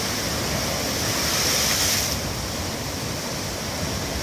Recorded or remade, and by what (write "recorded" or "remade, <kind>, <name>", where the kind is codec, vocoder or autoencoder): recorded